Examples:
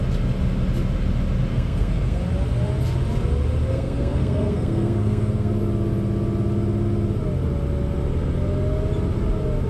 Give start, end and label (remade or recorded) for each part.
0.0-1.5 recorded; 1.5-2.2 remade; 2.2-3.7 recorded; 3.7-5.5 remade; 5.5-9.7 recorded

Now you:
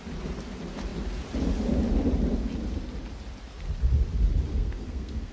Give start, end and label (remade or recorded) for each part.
0.0-4.5 recorded; 4.5-5.3 remade

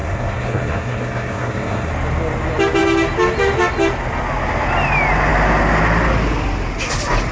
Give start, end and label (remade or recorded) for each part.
0.0-1.9 remade; 1.9-7.3 recorded

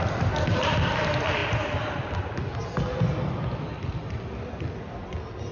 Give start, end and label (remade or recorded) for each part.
0.0-5.5 recorded

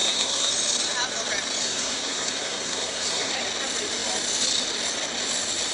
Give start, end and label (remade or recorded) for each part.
0.0-0.5 remade; 0.5-1.6 recorded; 1.6-3.3 remade; 3.3-5.7 recorded